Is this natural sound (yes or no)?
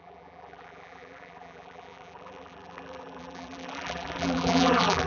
no